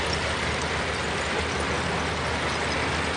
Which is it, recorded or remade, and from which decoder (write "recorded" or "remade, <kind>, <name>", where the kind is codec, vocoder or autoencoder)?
recorded